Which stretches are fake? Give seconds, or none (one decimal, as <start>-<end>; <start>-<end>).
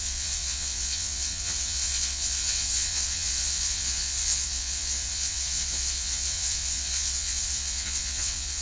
0.0-8.6